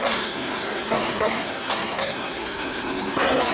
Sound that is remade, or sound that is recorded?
remade